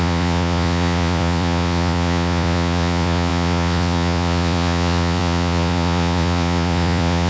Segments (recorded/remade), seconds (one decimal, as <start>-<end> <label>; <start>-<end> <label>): 0.0-7.3 remade

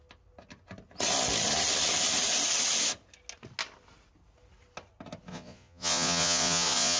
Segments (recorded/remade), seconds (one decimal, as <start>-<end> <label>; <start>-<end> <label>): 0.0-5.3 recorded; 5.3-7.0 remade

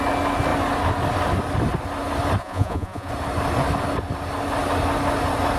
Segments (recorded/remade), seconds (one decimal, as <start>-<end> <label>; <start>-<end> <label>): 0.0-2.4 recorded; 2.4-3.1 remade; 3.1-5.6 recorded

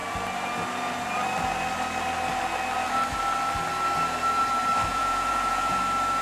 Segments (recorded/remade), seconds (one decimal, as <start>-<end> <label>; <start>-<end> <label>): 0.0-4.9 recorded; 4.9-5.8 remade; 5.8-6.2 recorded

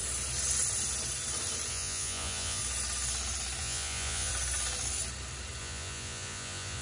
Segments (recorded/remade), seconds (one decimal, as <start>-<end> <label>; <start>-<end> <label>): 0.0-1.7 recorded; 1.7-2.6 remade; 2.6-3.6 recorded; 3.6-4.3 remade; 4.3-5.6 recorded; 5.6-6.8 remade